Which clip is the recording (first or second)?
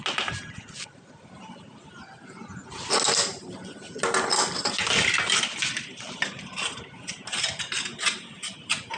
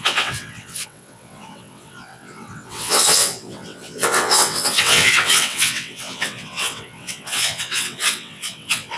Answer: first